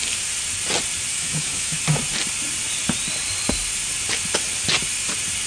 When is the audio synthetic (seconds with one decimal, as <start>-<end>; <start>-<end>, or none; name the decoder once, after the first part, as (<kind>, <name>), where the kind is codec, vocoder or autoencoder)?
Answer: 1.1-1.8 (autoencoder, DAC-VAE)